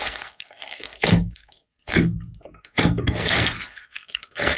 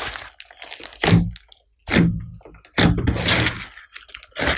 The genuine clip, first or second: second